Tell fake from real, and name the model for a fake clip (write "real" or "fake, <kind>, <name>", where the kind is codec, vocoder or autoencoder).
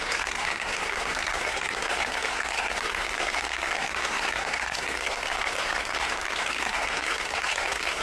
fake, codec, SNAC